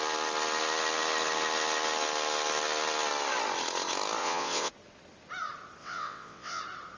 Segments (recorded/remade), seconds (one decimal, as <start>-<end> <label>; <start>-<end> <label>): 0.0-4.2 recorded; 4.2-4.7 remade; 4.7-5.8 recorded; 5.8-6.6 remade; 6.6-7.0 recorded